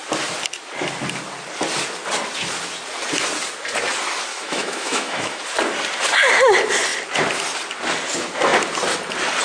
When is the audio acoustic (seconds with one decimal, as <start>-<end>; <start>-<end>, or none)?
0.0-4.3; 5.4-9.4